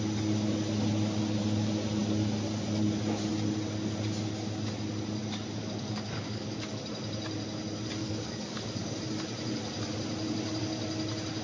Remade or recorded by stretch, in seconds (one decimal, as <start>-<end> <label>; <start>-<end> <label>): 0.0-5.6 recorded; 5.6-6.8 remade; 6.8-8.0 recorded; 8.0-9.0 remade; 9.0-11.4 recorded